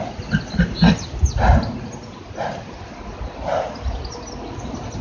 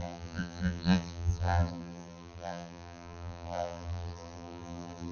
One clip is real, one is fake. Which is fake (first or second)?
second